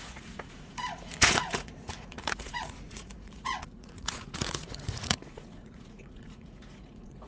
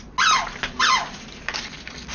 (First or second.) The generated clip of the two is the first